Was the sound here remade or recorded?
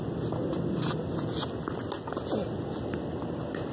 recorded